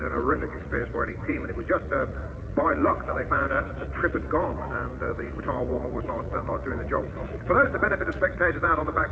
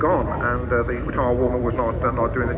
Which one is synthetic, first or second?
first